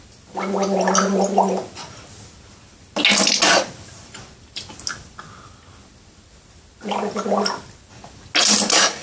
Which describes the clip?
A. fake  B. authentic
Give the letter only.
B